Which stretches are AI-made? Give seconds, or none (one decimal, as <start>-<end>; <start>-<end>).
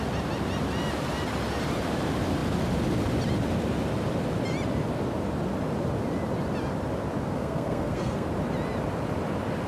7.3-8.3